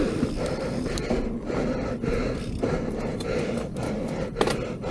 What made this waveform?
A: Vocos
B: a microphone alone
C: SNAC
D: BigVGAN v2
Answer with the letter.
B